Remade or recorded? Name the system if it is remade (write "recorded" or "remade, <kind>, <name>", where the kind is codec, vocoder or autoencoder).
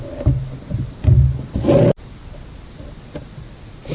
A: recorded